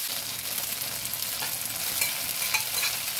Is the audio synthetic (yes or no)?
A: no